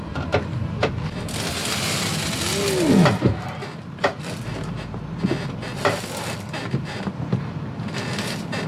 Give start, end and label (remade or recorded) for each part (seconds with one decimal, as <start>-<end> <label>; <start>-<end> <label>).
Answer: 0.0-1.6 remade; 1.6-6.2 recorded; 6.2-8.7 remade